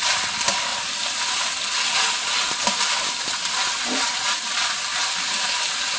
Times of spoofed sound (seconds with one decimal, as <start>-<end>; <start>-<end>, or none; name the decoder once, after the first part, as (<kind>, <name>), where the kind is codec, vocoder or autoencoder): none